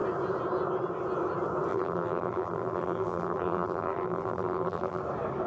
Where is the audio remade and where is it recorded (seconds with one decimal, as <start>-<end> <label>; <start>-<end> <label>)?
0.0-1.7 recorded; 1.7-5.0 remade; 5.0-5.5 recorded